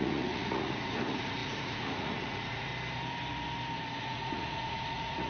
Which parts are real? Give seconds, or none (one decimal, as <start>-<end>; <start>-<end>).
2.7-4.0